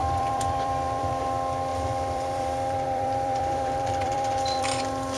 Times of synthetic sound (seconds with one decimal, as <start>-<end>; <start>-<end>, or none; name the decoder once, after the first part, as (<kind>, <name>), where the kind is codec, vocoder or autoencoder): 0.0-1.2 (vocoder, BigVGAN v2); 1.7-4.8